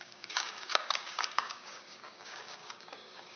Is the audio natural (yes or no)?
no